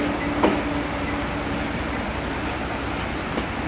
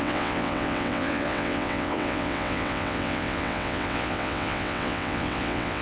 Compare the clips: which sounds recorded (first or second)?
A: first